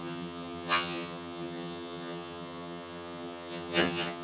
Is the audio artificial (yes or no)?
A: yes